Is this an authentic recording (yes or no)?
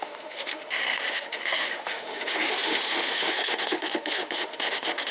no